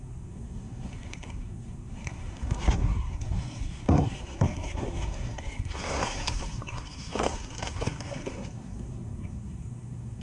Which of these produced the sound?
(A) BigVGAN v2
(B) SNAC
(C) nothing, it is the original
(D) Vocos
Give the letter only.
B